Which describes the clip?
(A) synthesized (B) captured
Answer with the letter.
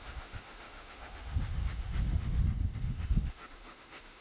A